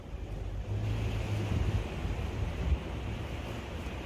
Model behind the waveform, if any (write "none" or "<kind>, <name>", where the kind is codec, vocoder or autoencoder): none